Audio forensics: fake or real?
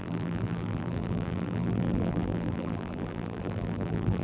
fake